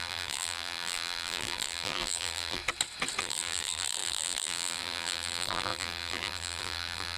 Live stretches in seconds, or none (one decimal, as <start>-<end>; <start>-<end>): 2.6-3.2